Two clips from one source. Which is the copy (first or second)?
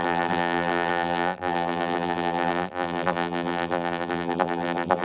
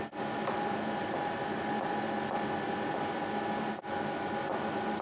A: first